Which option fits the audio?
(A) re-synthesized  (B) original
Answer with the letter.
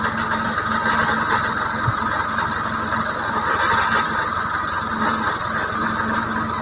B